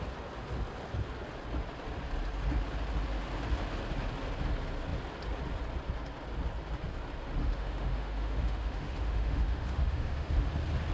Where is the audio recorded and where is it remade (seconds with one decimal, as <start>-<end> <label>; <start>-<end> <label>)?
0.0-7.4 recorded; 7.4-10.5 remade; 10.5-10.9 recorded